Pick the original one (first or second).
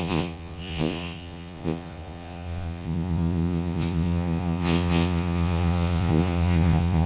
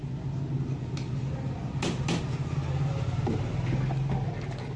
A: second